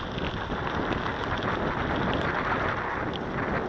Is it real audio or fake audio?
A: real